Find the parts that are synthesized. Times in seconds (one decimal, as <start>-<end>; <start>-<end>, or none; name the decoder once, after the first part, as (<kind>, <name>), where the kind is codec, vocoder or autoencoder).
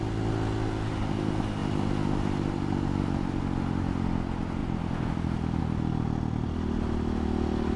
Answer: none